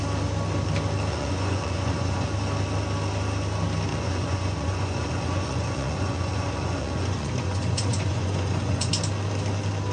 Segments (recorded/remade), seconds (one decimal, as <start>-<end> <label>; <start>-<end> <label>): 0.0-1.1 recorded; 1.1-2.3 remade; 2.3-3.9 recorded; 3.9-8.9 remade; 8.9-9.9 recorded